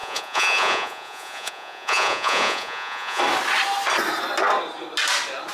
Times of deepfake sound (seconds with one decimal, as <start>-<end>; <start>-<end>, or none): 0.0-3.2